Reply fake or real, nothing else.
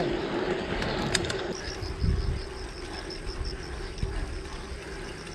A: real